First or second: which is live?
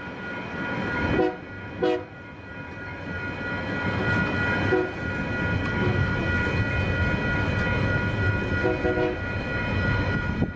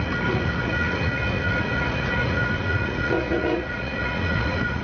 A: first